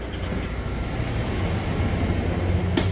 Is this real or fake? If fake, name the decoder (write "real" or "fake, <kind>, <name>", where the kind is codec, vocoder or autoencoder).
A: real